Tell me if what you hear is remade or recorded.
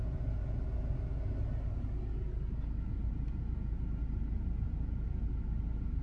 recorded